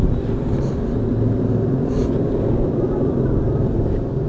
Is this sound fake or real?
real